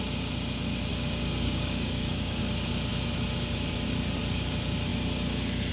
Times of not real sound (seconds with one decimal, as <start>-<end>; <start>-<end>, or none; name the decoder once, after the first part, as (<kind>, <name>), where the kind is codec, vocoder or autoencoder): 0.9-2.4 (codec, DAC)